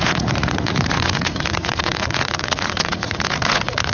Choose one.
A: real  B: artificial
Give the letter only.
B